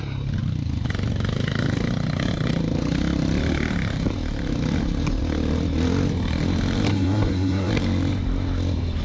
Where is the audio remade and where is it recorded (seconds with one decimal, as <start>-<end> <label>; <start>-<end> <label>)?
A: 0.0-6.9 recorded; 6.9-7.7 remade; 7.7-9.0 recorded